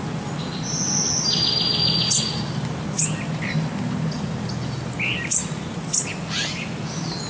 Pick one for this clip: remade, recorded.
recorded